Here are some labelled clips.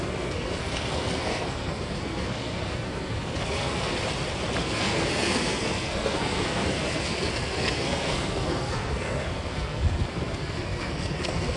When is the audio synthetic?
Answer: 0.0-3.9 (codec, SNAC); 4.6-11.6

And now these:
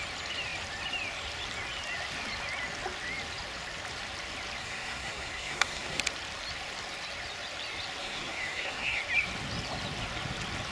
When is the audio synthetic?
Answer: 4.6-6.0 (codec, SNAC); 8.0-9.0